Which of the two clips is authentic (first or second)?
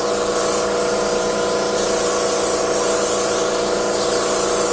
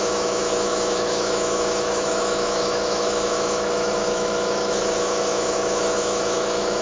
first